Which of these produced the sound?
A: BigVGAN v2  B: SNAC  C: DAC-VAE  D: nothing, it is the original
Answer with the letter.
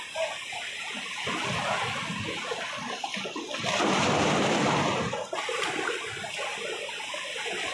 D